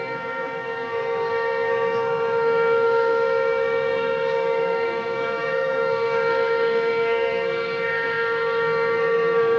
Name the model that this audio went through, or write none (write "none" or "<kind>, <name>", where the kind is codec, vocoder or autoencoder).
codec, SNAC